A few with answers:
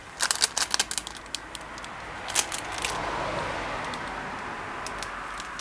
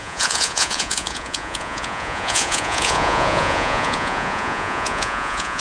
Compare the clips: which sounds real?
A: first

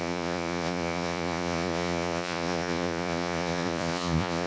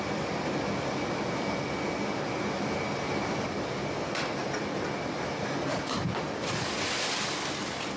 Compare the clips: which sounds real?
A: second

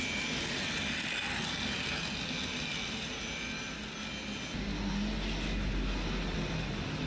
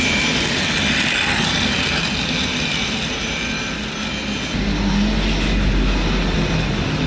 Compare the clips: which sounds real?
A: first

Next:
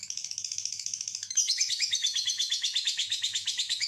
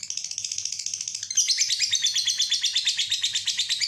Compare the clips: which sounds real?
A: second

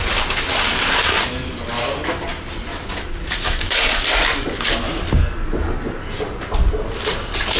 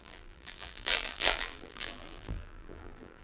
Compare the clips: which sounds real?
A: first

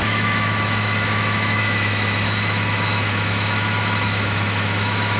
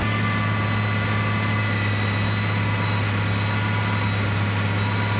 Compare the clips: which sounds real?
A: second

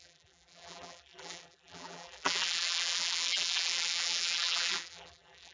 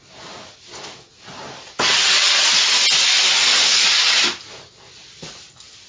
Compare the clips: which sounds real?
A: second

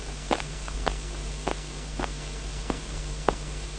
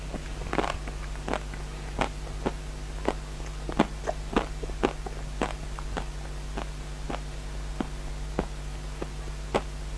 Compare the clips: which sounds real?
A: second